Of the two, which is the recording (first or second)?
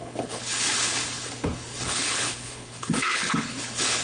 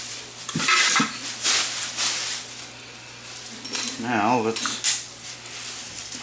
second